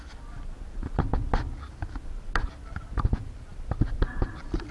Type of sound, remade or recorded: recorded